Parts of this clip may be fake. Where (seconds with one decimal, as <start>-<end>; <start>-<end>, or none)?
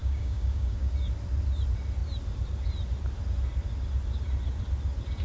0.0-0.9